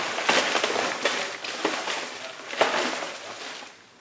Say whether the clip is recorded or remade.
recorded